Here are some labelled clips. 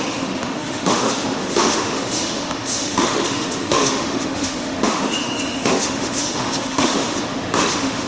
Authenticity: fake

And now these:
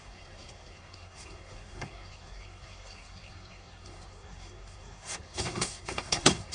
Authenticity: fake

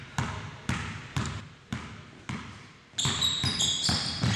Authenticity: real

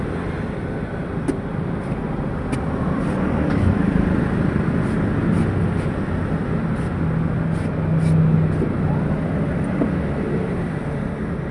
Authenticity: real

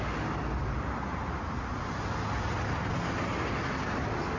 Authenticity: real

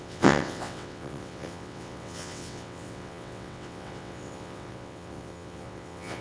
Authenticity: fake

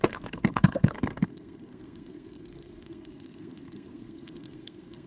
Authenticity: fake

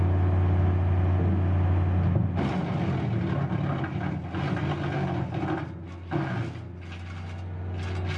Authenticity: real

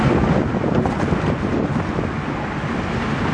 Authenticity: real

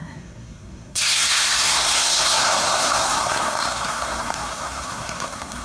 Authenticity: fake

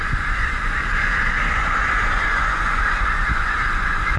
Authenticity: fake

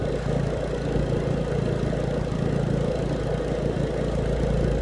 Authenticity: real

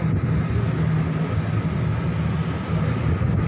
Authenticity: real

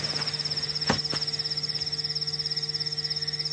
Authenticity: real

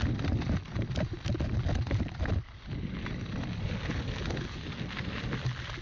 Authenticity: real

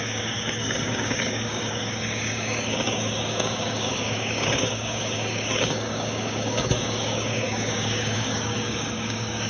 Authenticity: fake